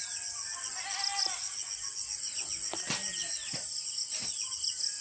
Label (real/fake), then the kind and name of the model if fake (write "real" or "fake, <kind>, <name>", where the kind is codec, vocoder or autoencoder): real